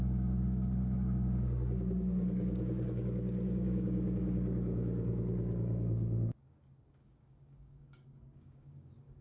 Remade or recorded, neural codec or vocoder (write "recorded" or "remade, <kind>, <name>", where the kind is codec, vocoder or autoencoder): remade, codec, DAC